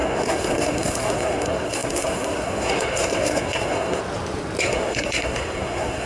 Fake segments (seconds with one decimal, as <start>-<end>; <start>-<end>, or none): 0.0-4.0; 4.6-6.1